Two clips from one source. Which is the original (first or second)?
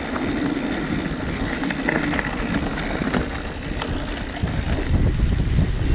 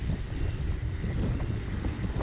first